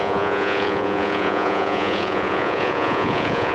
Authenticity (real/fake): fake